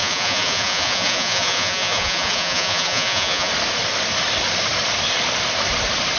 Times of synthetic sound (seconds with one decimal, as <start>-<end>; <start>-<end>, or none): 0.0-3.5